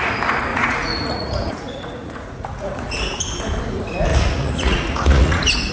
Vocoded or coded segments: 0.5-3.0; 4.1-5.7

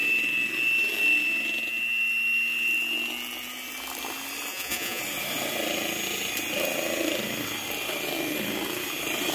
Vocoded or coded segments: 4.5-5.0

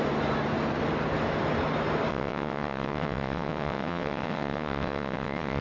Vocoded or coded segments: 2.1-5.6

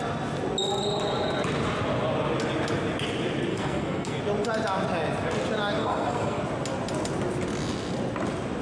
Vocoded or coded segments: 3.5-4.2; 5.8-6.4

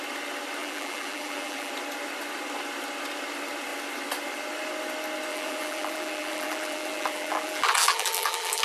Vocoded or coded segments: 0.6-1.7; 5.3-8.6

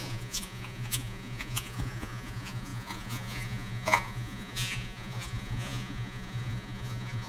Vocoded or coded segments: 0.0-7.3

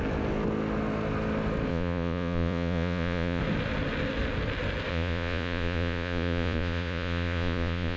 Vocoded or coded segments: 1.7-3.4; 4.9-8.0